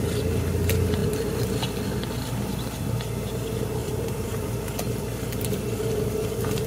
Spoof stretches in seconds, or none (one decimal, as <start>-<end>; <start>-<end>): 3.8-4.5